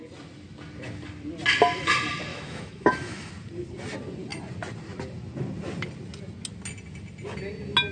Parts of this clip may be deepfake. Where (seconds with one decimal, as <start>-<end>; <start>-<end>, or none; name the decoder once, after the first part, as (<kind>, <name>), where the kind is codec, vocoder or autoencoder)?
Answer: 2.3-3.3 (autoencoder, DAC-VAE)